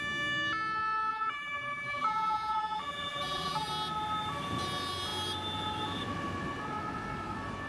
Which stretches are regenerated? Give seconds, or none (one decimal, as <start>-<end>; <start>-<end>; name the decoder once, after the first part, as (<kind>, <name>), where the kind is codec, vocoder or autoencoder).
1.1-3.7 (vocoder, BigVGAN v2)